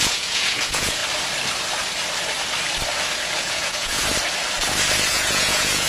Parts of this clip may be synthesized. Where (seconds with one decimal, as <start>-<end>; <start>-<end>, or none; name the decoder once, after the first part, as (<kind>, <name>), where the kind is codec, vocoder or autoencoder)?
0.0-1.0 (vocoder, Vocos); 3.4-4.0; 5.1-5.9

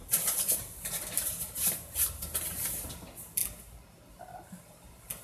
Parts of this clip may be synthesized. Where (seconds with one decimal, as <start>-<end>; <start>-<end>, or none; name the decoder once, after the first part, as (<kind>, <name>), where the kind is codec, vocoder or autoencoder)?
0.0-2.8 (vocoder, BigVGAN v2)

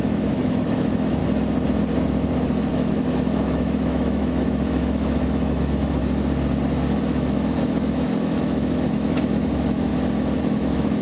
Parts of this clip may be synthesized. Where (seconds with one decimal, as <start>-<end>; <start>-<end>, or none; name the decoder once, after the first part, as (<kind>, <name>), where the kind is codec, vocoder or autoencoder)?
0.0-1.2 (autoencoder, DAC-VAE); 2.7-6.0; 7.0-9.9; 10.4-11.0

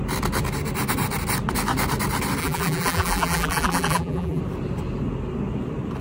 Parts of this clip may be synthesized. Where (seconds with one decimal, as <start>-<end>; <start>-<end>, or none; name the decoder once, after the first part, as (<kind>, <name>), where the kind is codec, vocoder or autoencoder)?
2.4-4.4 (vocoder, BigVGAN v2)

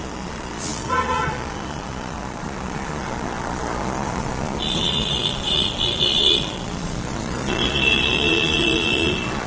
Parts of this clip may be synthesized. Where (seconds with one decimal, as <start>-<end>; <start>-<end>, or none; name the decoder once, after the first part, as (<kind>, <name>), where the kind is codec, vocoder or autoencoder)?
0.0-9.5 (vocoder, Vocos)